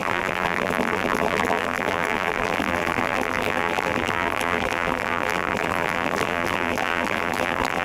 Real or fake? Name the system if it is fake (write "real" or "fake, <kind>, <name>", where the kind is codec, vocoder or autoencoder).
fake, vocoder, BigVGAN v2